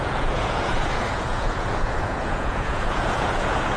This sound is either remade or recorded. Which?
remade